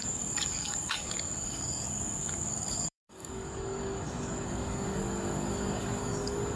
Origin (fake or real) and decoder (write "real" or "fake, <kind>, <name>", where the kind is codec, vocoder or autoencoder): fake, codec, DAC